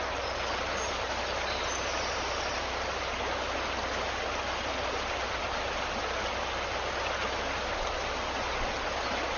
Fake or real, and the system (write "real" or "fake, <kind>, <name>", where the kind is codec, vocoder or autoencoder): real